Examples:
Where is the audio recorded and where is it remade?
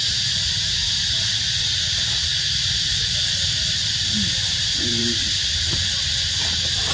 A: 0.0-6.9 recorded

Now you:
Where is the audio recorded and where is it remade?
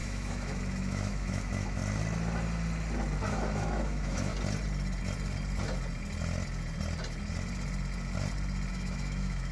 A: 0.0-1.8 remade; 1.8-3.3 recorded; 3.3-4.3 remade; 4.3-8.7 recorded; 8.7-9.5 remade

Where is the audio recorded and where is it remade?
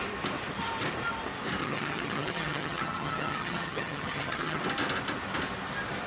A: 0.0-1.6 recorded; 1.6-4.6 remade; 4.6-6.1 recorded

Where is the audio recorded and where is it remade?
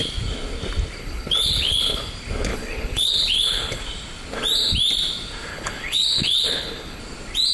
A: 0.0-1.0 recorded; 1.0-2.1 remade; 2.1-2.5 recorded; 2.5-3.8 remade; 3.8-5.5 recorded; 5.5-7.0 remade; 7.0-7.5 recorded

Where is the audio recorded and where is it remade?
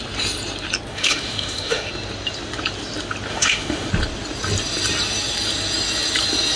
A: 0.0-0.9 recorded; 0.9-1.9 remade; 1.9-3.3 recorded; 3.3-3.9 remade; 3.9-6.6 recorded